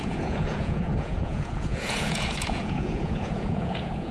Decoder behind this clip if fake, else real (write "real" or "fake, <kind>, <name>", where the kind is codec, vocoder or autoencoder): fake, vocoder, Vocos